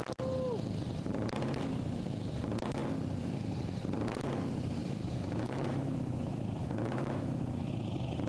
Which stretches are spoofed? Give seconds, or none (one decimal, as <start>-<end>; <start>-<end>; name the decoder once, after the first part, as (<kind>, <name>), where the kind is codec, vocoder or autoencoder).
4.8-7.7 (autoencoder, DAC-VAE)